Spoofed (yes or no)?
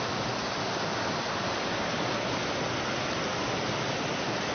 no